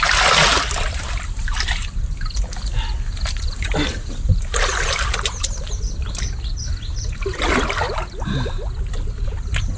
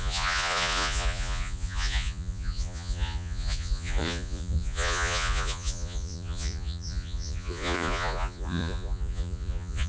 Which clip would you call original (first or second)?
first